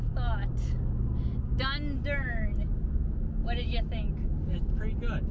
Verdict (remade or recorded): recorded